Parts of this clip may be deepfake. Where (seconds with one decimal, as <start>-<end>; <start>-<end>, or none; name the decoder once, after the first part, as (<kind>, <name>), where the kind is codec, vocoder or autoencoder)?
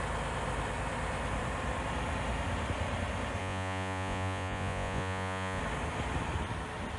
3.4-5.6 (vocoder, Vocos)